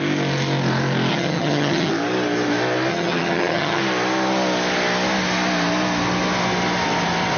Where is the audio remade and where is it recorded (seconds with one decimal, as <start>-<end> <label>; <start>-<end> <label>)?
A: 0.0-1.1 recorded; 1.1-1.9 remade; 1.9-2.9 recorded; 2.9-3.8 remade; 3.8-7.4 recorded